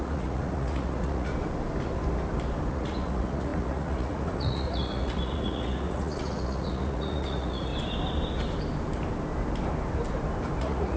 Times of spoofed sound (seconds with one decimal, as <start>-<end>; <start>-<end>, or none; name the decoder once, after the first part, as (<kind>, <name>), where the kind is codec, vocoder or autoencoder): 0.0-1.3 (vocoder, Vocos); 2.7-7.7; 10.6-11.0